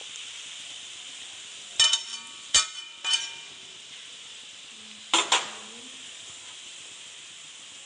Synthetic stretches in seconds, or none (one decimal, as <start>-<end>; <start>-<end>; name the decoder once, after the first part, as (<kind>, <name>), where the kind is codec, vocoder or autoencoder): none

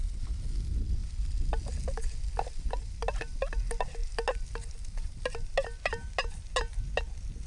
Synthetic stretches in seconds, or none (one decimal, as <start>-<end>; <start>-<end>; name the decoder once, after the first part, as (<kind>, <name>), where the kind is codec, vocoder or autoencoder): none

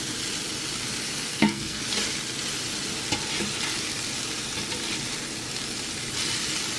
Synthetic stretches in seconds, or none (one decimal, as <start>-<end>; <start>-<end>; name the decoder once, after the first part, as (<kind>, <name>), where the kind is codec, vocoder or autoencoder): 1.3-1.8 (codec, SNAC)

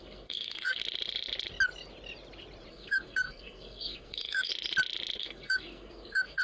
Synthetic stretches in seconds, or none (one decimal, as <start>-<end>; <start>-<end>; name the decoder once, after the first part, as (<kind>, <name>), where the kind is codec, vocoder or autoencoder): 0.0-0.8 (codec, SNAC); 2.7-4.5; 5.2-6.4

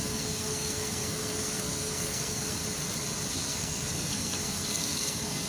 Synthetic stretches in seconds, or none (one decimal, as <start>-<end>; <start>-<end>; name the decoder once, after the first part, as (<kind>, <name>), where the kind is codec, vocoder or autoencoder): 0.0-2.6 (codec, SNAC); 3.3-5.5

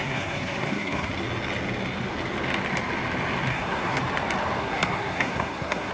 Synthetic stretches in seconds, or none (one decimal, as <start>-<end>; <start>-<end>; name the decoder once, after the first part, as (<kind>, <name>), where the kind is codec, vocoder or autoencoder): 0.0-1.1 (codec, SNAC); 3.5-4.0; 4.6-5.9

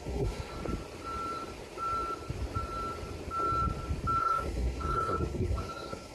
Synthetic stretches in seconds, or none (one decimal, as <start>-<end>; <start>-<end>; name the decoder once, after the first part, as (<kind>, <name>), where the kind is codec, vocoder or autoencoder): 0.0-0.5 (codec, SNAC); 4.2-6.1

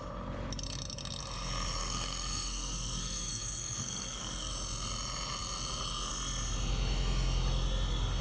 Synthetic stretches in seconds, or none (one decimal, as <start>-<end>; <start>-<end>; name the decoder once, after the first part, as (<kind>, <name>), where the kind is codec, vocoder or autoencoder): 1.8-4.5 (codec, SNAC)